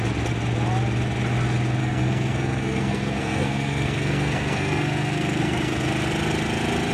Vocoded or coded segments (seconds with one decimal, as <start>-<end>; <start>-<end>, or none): 1.8-5.9